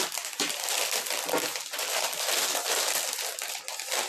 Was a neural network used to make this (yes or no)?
no